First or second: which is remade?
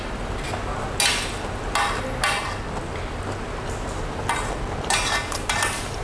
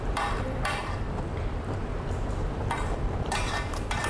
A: second